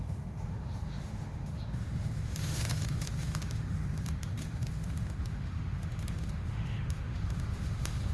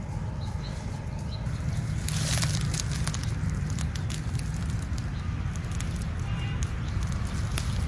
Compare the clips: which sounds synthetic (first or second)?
first